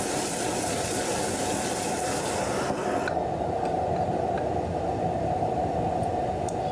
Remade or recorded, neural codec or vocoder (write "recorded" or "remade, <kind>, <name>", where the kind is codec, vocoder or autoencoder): recorded